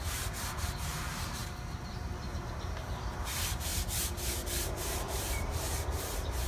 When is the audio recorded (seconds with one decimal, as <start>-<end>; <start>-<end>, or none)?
3.7-4.8

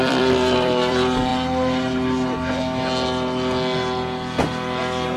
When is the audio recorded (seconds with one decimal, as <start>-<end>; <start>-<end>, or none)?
1.3-4.4

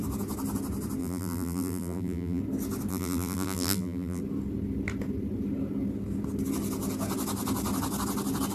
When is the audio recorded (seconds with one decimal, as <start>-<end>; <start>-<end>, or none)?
0.0-1.0; 2.4-2.9; 4.2-8.5

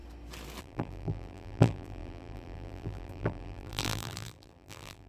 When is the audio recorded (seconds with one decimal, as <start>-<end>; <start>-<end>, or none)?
0.0-0.6

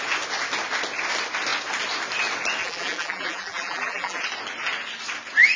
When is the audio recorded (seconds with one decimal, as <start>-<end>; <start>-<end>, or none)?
0.0-2.6; 4.2-5.6